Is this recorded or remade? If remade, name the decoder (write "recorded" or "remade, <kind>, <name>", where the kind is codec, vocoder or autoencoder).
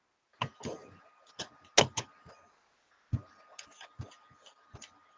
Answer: recorded